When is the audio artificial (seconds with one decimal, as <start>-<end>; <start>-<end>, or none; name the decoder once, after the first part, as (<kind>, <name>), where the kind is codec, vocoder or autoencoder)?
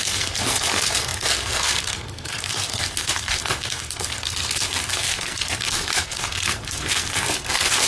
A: 0.0-7.9 (codec, SNAC)